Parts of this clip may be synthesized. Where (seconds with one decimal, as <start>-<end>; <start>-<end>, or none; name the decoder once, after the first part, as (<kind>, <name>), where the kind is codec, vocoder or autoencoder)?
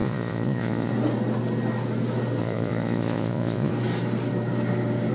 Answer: 0.0-0.9 (vocoder, Vocos); 2.4-3.7